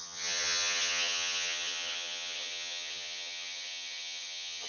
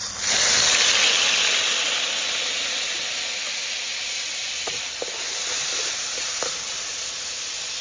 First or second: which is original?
second